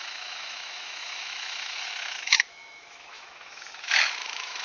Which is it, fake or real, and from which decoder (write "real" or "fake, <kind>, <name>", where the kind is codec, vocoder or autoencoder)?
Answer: fake, autoencoder, DAC-VAE